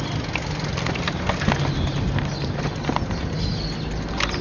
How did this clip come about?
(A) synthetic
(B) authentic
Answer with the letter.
B